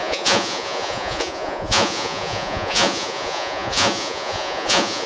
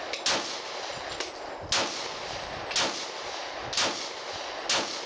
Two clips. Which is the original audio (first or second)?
second